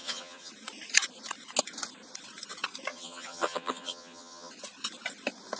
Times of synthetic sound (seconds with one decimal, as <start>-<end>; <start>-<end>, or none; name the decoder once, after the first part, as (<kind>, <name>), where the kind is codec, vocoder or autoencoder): 0.0-0.5 (vocoder, HiFi-GAN); 2.9-4.5